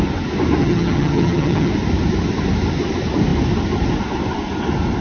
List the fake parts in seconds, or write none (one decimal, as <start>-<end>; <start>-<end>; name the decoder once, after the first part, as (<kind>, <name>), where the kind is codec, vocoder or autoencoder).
0.6-1.7 (vocoder, HiFi-GAN)